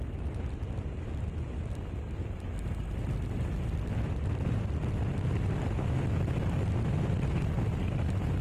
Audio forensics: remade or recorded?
recorded